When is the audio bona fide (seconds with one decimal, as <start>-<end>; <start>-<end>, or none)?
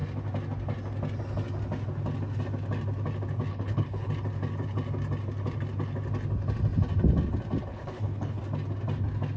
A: 0.0-3.5; 4.1-7.7; 8.4-9.4